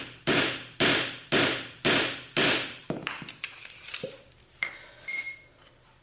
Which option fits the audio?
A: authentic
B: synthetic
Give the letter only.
B